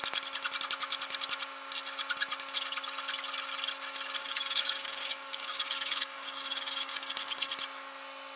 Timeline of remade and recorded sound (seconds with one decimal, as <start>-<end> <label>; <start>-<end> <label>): 0.0-4.2 recorded; 4.2-7.5 remade; 7.5-8.4 recorded

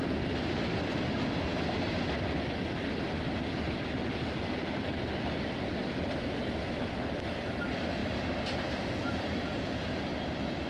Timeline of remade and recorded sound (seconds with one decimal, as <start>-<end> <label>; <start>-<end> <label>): 0.0-10.7 recorded

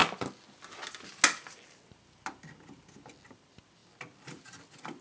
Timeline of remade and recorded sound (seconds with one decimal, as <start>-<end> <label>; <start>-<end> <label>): 0.0-5.0 recorded

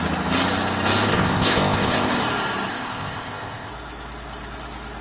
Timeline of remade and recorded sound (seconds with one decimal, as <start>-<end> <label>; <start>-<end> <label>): 0.0-1.1 recorded; 1.1-2.1 remade; 2.1-2.7 recorded; 2.7-3.7 remade; 3.7-5.0 recorded

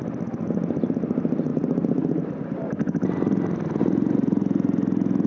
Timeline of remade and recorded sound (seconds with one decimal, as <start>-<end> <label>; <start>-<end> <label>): 0.0-5.3 recorded

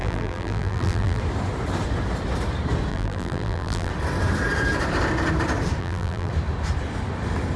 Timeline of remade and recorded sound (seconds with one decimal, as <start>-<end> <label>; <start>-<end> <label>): 0.0-1.2 remade; 1.2-2.9 recorded; 2.9-3.9 remade; 3.9-5.8 recorded; 5.8-6.3 remade; 6.3-7.6 recorded

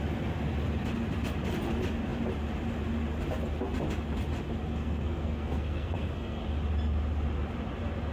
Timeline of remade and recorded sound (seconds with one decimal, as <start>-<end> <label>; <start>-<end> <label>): 0.0-4.8 recorded; 4.8-6.4 remade; 6.4-8.1 recorded

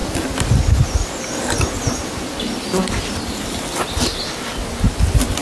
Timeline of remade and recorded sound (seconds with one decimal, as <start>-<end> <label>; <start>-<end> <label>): 0.0-5.4 recorded